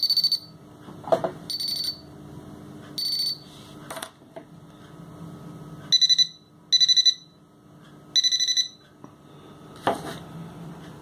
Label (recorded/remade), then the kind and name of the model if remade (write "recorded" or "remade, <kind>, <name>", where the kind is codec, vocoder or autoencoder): recorded